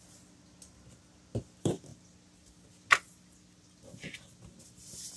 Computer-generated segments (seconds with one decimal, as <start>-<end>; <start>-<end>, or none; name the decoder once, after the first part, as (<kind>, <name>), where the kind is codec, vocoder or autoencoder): none